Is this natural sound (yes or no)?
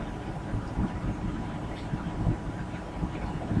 no